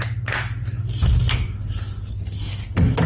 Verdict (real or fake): real